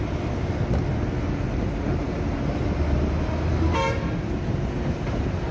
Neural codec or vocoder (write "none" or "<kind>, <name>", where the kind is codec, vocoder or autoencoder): none